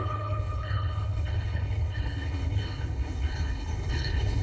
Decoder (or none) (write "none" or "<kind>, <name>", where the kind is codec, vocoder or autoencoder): codec, HILCodec